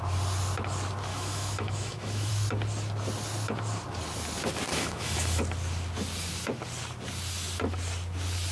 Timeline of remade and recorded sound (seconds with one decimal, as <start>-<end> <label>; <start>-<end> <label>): 0.0-1.1 recorded; 1.1-2.3 remade; 2.3-4.7 recorded; 4.7-5.4 remade; 5.4-8.5 recorded

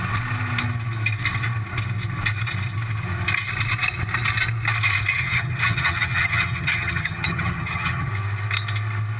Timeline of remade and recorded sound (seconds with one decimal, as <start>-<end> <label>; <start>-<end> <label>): 0.0-5.1 recorded; 5.1-8.1 remade; 8.1-9.2 recorded

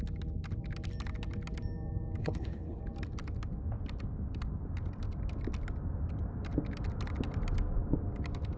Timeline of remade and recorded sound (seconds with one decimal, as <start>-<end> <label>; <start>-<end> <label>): 0.0-2.2 recorded; 2.2-2.8 remade; 2.8-8.6 recorded

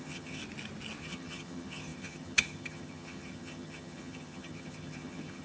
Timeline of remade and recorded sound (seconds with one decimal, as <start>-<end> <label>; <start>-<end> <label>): 0.0-0.4 remade; 0.4-1.0 recorded; 1.0-5.4 remade

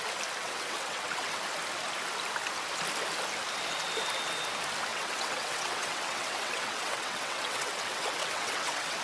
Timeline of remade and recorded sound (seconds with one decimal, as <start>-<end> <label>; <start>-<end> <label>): 0.0-0.4 recorded; 0.4-1.4 remade; 1.4-4.9 recorded; 4.9-9.0 remade